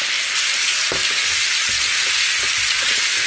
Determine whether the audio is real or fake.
real